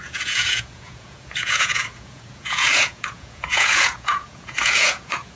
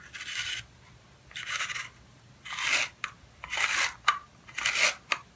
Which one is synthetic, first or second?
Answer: first